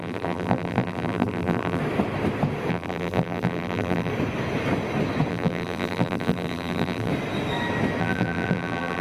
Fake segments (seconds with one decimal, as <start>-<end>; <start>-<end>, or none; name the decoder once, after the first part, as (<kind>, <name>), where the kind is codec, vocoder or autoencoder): 0.0-1.8 (vocoder, BigVGAN v2); 2.7-4.1; 5.3-7.1; 8.0-9.0